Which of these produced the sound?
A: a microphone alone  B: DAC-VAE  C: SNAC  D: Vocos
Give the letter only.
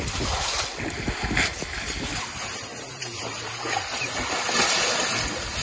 A